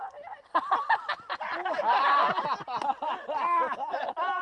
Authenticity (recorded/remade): recorded